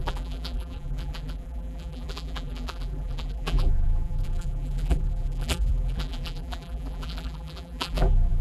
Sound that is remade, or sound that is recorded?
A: remade